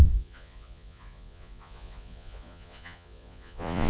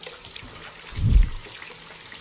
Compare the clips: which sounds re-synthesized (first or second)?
first